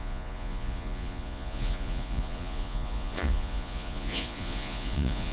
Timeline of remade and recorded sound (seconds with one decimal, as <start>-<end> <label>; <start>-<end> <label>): 0.0-5.3 remade